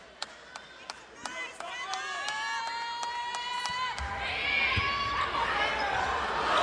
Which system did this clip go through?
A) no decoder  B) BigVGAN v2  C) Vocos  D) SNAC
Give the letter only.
A